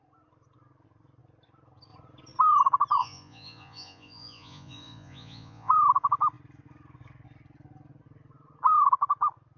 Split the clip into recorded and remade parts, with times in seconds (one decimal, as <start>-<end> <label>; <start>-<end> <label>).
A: 0.0-3.0 recorded; 3.0-5.7 remade; 5.7-9.6 recorded